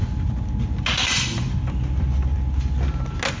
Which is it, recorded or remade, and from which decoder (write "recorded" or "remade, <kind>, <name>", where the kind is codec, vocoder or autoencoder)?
recorded